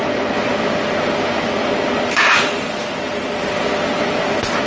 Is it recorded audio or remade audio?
recorded